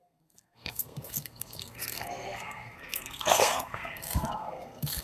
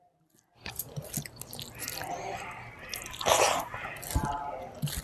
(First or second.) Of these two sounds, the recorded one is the second